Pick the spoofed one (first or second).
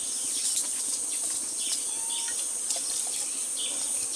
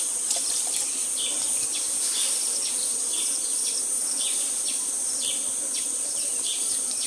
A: second